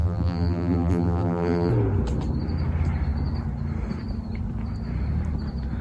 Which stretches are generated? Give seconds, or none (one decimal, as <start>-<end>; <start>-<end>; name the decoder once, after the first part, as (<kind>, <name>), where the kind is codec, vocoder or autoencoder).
0.0-1.7 (vocoder, BigVGAN v2)